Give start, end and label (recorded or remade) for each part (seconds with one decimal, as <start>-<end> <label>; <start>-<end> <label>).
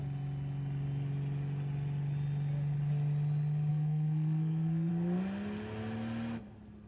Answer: 0.0-3.7 recorded; 3.7-4.9 remade; 4.9-6.9 recorded